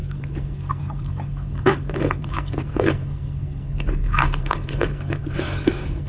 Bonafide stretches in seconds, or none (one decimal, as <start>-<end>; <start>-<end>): none